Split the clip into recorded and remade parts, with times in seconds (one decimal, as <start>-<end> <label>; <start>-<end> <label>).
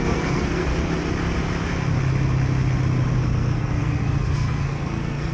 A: 0.0-0.7 remade; 0.7-3.2 recorded; 3.2-5.3 remade